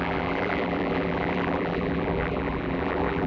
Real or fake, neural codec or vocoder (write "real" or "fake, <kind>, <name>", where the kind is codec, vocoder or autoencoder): fake, vocoder, BigVGAN v2